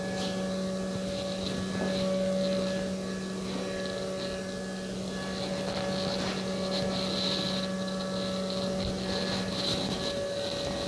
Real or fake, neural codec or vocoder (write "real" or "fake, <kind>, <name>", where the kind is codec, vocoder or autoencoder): real